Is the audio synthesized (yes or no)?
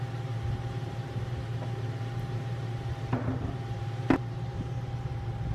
yes